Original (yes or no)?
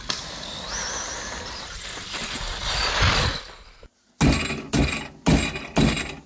yes